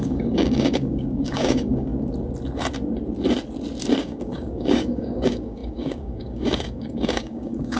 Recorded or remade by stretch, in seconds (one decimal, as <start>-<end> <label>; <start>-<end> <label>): 0.0-1.9 remade; 1.9-4.0 recorded; 4.0-7.8 remade